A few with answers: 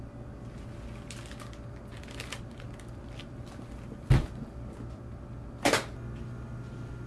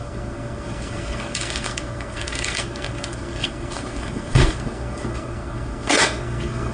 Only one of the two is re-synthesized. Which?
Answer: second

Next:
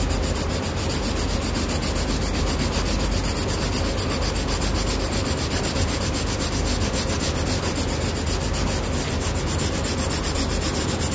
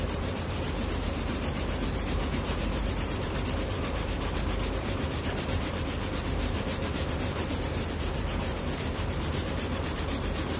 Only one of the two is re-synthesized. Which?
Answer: second